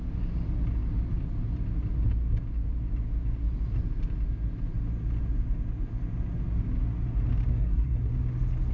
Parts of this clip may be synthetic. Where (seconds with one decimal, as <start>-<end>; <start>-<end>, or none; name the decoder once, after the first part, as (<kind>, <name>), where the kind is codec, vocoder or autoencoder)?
7.5-8.1 (codec, SNAC)

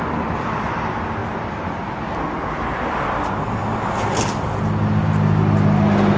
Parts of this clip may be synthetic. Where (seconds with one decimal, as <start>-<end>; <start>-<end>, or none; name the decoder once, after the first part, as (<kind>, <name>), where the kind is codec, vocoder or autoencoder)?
none

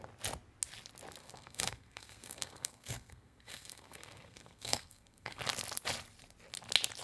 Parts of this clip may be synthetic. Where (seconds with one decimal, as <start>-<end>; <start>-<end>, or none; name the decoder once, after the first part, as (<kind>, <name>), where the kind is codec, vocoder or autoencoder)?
1.2-5.4 (codec, SNAC)

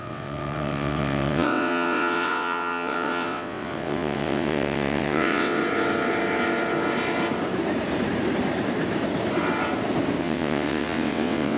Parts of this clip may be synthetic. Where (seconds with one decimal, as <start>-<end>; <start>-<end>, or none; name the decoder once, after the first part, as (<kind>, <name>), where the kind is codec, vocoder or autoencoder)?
0.0-5.6 (vocoder, WaveNeXt); 10.2-11.6

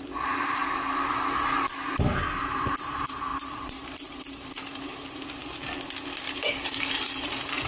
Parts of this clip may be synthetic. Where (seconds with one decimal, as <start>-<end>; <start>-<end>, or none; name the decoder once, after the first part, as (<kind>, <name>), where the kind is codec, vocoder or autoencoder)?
0.0-0.6 (vocoder, BigVGAN v2); 2.4-5.4; 6.3-7.7

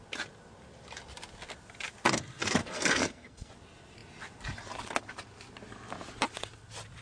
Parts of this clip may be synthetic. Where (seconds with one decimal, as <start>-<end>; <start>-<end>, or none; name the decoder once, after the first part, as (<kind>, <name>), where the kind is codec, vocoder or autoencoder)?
2.6-3.5 (codec, SNAC)

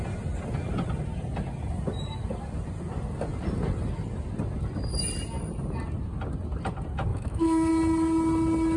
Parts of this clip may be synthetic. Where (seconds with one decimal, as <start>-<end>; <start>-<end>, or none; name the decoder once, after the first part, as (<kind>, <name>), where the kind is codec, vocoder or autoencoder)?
7.1-7.7 (autoencoder, DAC-VAE)